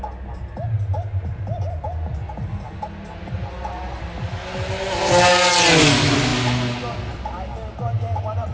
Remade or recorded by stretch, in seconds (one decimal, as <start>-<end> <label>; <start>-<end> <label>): 0.0-8.5 recorded